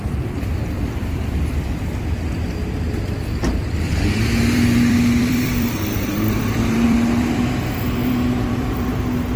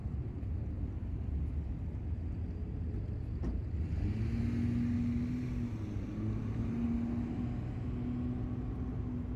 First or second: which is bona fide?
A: second